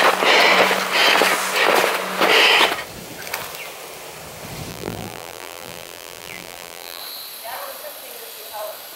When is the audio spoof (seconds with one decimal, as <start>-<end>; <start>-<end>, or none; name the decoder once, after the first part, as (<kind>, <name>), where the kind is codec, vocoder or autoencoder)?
4.7-7.0 (vocoder, BigVGAN v2)